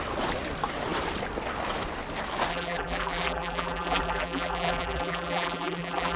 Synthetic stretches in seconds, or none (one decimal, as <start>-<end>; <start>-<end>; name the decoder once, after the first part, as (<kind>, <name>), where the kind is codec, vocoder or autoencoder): 2.5-6.2 (vocoder, BigVGAN v2)